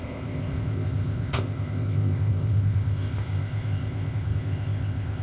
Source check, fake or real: fake